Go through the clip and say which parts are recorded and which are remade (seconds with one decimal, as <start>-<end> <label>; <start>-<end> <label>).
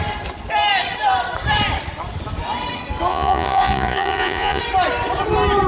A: 0.0-3.1 recorded; 3.1-4.6 remade; 4.6-5.7 recorded